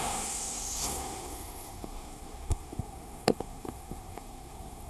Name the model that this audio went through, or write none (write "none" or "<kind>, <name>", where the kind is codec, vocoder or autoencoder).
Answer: codec, SNAC